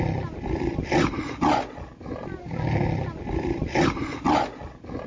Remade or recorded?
recorded